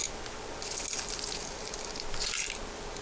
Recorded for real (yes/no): yes